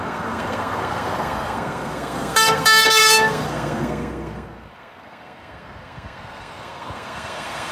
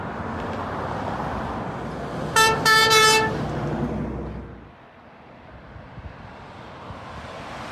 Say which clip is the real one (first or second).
second